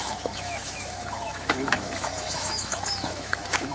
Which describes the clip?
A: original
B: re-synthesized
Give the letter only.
B